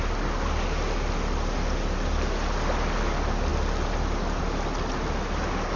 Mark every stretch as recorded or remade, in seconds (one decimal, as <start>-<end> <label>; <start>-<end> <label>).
0.0-5.8 recorded